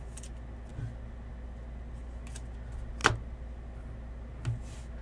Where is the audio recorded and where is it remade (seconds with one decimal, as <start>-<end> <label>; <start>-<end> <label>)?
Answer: 0.0-5.0 recorded